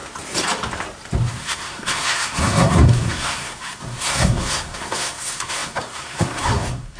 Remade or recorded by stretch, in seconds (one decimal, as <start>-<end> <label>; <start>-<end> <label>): 0.0-1.3 recorded; 1.3-7.0 remade